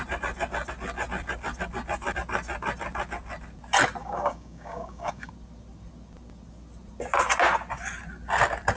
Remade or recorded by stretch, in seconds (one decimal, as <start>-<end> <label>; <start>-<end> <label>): 0.0-4.0 recorded; 4.0-5.3 remade; 5.3-8.8 recorded